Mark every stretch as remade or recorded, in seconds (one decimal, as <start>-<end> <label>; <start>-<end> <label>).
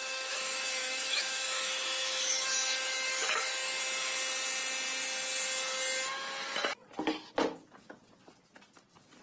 0.0-3.8 remade; 3.8-9.2 recorded